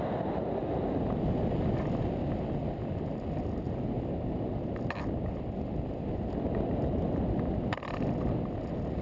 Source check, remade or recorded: recorded